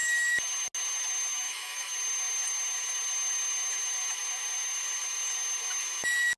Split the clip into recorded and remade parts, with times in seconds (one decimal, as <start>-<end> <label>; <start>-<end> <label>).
0.0-1.3 recorded; 1.3-1.9 remade; 1.9-6.4 recorded